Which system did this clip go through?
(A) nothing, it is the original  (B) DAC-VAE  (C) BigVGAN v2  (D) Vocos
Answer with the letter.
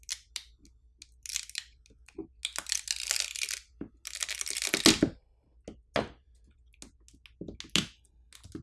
A